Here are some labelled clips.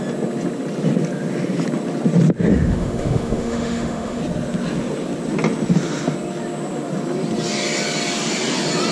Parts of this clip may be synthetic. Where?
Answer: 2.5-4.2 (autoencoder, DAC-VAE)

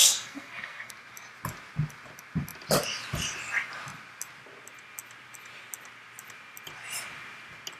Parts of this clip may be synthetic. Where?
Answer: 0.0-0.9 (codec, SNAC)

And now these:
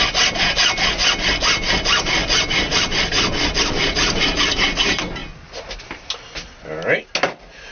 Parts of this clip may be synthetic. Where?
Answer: none